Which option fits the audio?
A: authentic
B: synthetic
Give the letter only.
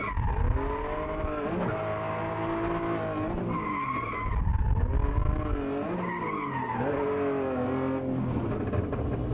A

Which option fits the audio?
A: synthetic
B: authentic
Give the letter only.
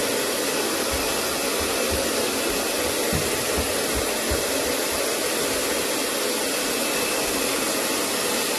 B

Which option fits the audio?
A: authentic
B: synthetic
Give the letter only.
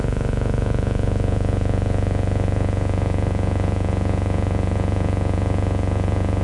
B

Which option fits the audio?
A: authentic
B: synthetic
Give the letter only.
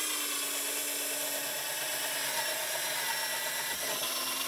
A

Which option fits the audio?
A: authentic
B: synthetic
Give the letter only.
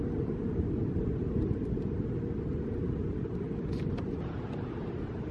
A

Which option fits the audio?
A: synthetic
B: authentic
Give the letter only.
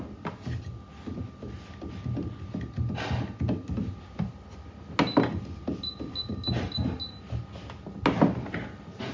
B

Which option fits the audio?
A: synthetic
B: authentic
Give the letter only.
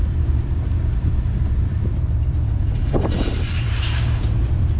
A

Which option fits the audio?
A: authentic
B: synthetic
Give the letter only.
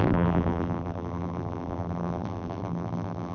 B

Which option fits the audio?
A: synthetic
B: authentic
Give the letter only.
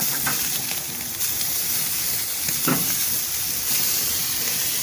B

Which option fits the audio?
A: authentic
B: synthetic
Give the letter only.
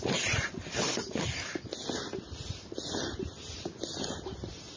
A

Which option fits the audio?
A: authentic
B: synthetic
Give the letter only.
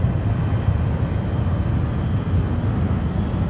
A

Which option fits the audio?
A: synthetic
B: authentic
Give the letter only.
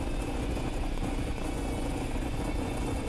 A